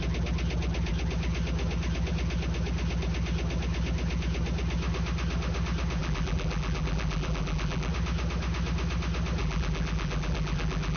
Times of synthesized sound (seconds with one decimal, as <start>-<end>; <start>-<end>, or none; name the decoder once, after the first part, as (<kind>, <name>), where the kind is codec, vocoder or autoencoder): 6.0-7.9 (vocoder, BigVGAN v2); 9.4-11.0